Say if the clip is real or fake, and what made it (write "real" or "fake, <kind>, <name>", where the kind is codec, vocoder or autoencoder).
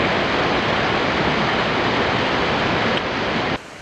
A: real